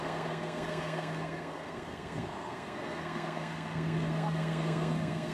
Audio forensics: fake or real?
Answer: fake